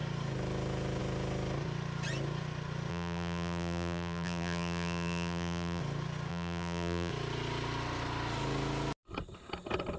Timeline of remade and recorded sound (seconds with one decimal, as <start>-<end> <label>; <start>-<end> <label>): 0.0-2.9 recorded; 2.9-5.8 remade; 5.8-6.3 recorded; 6.3-7.1 remade; 7.1-10.0 recorded